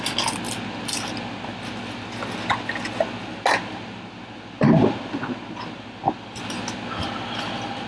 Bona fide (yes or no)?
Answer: yes